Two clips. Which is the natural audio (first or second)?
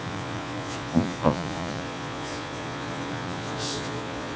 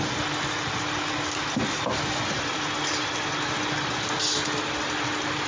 second